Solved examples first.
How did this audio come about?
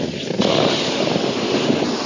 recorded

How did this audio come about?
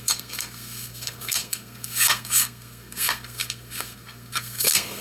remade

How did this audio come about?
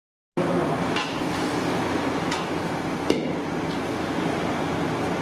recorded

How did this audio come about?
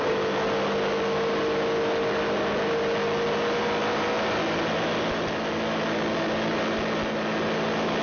recorded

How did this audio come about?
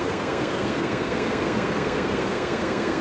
remade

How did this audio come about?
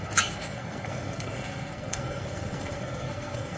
remade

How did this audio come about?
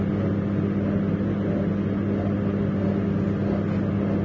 recorded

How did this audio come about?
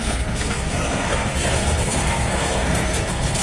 remade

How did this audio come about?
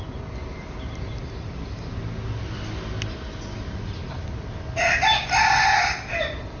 recorded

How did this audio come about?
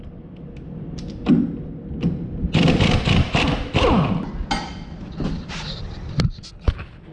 recorded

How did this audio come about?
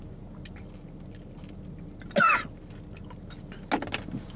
recorded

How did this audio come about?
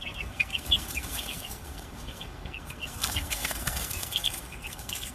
remade